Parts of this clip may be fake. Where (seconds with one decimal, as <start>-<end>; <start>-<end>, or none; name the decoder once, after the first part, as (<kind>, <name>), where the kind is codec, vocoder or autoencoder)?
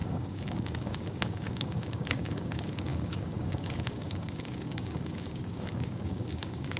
0.0-6.8 (codec, DAC)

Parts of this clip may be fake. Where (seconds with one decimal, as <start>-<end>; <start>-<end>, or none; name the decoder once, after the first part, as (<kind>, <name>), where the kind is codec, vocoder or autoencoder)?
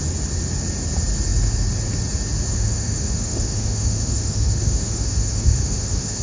2.5-6.2 (autoencoder, DAC-VAE)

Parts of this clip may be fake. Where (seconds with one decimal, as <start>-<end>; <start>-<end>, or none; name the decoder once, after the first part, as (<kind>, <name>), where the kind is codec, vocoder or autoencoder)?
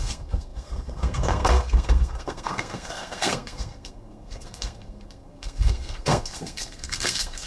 0.0-7.5 (codec, SNAC)